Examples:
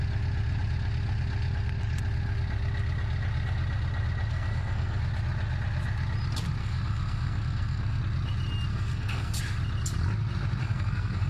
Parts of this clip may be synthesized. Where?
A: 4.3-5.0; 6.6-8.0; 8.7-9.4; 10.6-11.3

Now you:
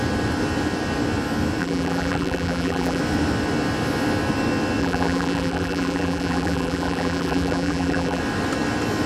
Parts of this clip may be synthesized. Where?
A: 1.6-3.0; 4.8-8.2

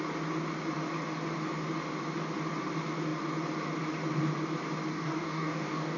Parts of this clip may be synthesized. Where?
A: 4.9-6.0